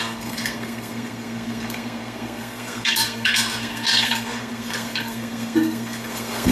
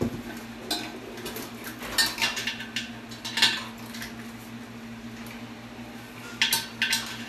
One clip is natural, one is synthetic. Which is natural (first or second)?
second